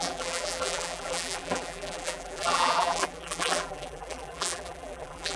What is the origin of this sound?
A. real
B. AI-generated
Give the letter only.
B